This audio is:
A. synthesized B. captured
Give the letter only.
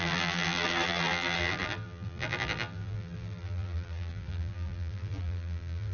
A